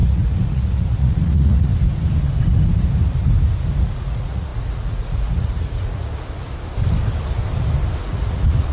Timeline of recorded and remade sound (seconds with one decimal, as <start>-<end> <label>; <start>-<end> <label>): 0.0-1.7 remade; 1.7-3.8 recorded; 3.8-6.1 remade; 6.1-8.0 recorded; 8.0-8.7 remade